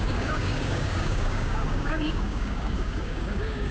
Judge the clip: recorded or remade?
remade